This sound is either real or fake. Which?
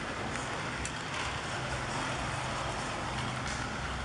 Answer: real